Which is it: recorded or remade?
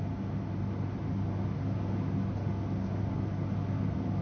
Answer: recorded